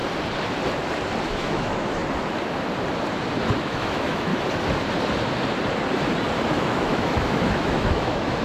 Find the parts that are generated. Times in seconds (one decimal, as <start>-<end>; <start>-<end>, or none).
1.2-2.0; 3.6-4.3; 6.5-8.4